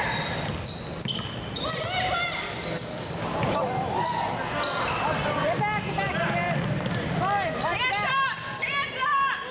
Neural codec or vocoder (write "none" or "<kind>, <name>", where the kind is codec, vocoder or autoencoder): none